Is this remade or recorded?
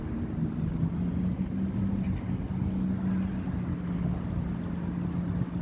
recorded